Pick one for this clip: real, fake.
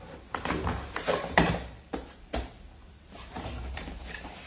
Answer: fake